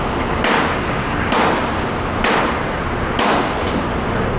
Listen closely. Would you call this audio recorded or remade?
recorded